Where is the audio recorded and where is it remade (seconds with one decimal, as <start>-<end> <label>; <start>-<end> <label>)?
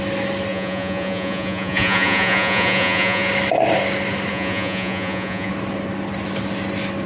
0.0-0.5 recorded; 0.5-3.3 remade; 3.3-4.3 recorded; 4.3-5.5 remade; 5.5-7.1 recorded